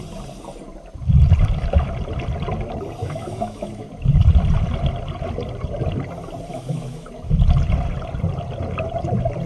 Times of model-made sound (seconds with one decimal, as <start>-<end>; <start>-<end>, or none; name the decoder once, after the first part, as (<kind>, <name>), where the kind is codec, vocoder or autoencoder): 3.0-3.9 (autoencoder, DAC-VAE); 6.5-7.3